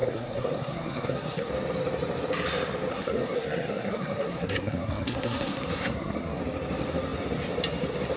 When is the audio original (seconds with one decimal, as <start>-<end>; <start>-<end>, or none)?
1.5-2.9; 6.4-8.2